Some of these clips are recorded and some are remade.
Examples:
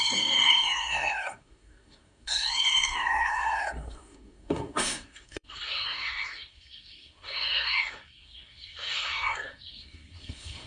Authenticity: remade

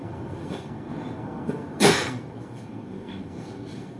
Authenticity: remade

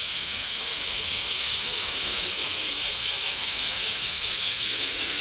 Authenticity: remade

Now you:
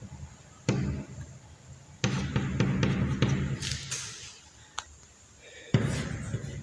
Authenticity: recorded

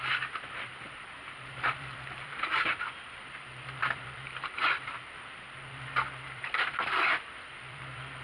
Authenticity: remade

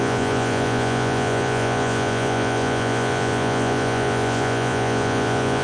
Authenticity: remade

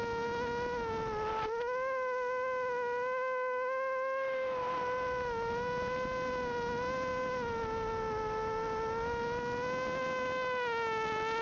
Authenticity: recorded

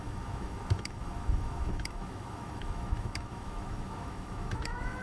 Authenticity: remade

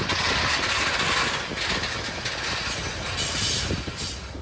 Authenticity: recorded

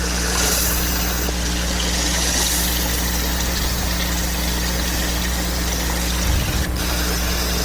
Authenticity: recorded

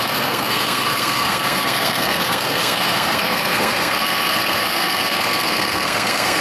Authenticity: remade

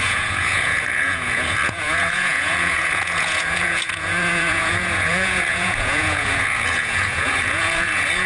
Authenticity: remade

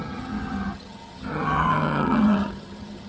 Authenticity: remade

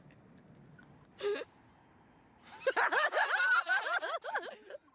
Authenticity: recorded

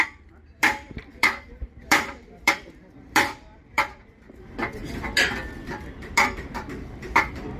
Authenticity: remade